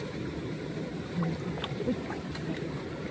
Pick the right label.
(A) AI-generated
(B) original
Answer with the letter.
B